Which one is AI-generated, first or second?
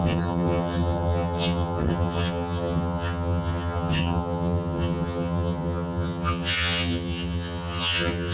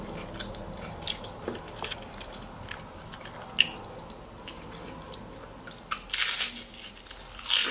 first